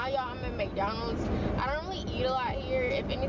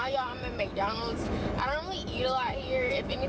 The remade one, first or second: second